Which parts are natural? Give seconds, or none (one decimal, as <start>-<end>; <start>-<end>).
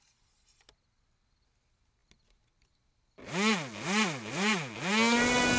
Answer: 0.0-5.6